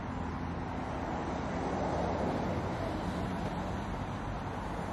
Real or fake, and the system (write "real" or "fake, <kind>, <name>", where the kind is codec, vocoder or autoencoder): real